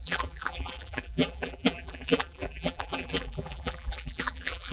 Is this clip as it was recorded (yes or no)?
no